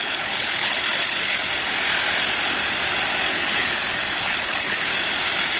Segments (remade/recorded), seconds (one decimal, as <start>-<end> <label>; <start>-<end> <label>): 0.0-1.5 remade; 1.5-3.3 recorded; 3.3-3.7 remade; 3.7-4.2 recorded; 4.2-4.9 remade; 4.9-5.6 recorded